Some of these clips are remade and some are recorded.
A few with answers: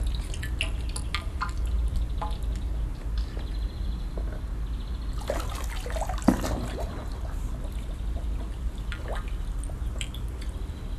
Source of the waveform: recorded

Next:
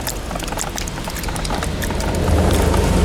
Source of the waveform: recorded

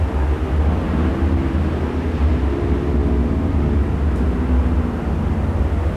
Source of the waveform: recorded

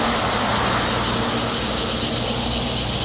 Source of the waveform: recorded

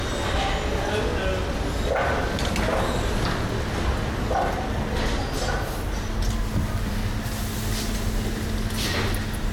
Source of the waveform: recorded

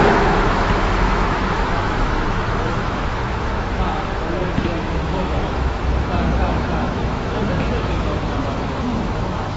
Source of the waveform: remade